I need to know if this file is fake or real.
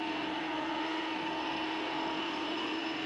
fake